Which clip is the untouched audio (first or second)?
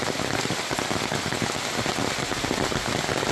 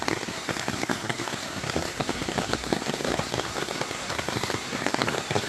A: first